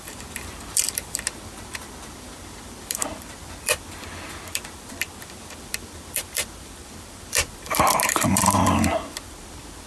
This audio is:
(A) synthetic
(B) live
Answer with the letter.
A